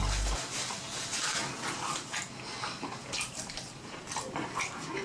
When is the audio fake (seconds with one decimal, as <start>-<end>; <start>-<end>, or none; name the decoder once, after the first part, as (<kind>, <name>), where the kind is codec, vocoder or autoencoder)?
3.0-4.6 (vocoder, BigVGAN v2)